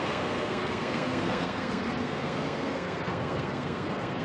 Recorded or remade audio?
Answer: remade